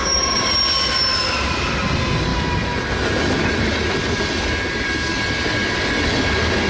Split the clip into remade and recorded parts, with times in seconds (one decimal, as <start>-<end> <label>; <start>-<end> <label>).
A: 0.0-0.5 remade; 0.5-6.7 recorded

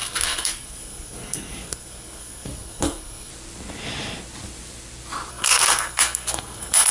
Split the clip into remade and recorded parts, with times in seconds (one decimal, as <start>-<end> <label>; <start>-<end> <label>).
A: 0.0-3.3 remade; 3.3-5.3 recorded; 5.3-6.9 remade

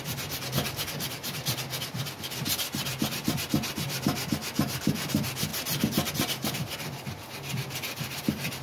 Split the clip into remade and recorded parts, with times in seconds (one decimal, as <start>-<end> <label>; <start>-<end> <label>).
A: 0.0-5.5 recorded; 5.5-6.1 remade; 6.1-8.6 recorded

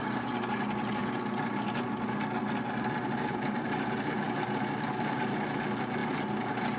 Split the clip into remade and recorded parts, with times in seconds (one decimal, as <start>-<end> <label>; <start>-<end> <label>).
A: 0.0-6.8 recorded

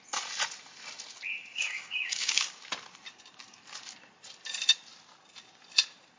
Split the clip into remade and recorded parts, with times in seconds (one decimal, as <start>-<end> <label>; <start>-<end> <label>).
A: 0.0-1.4 recorded; 1.4-2.5 remade; 2.5-6.2 recorded